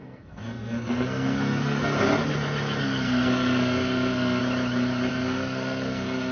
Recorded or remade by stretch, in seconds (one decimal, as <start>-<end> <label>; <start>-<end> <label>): 0.0-1.8 remade; 1.8-2.8 recorded; 2.8-4.4 remade; 4.4-5.1 recorded; 5.1-6.3 remade

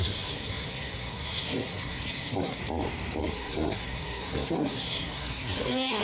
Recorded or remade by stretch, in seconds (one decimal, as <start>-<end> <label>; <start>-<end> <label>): 0.0-2.6 remade; 2.6-3.2 recorded; 3.2-6.0 remade

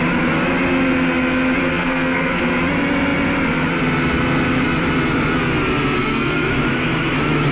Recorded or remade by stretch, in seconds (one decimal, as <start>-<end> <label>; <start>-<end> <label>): 0.0-1.7 recorded; 1.7-2.4 remade; 2.4-6.0 recorded; 6.0-6.5 remade; 6.5-7.5 recorded